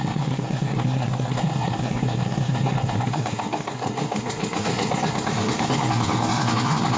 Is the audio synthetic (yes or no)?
yes